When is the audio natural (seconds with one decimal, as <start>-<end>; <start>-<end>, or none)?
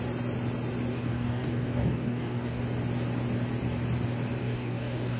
0.0-0.9; 2.6-4.4